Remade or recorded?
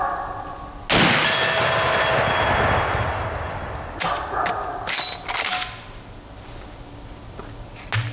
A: recorded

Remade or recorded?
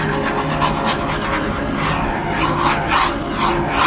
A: recorded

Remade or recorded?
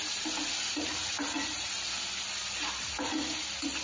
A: recorded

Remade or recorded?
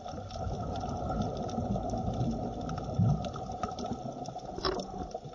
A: recorded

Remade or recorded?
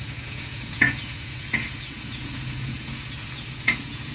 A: remade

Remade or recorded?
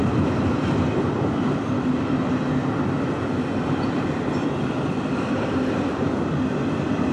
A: remade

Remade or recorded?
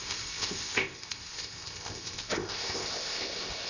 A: remade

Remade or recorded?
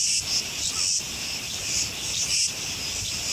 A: recorded